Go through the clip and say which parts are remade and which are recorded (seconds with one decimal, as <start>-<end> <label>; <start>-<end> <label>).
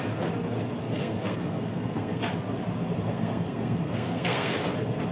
0.0-0.8 recorded; 0.8-2.2 remade; 2.2-3.0 recorded; 3.0-4.6 remade; 4.6-5.1 recorded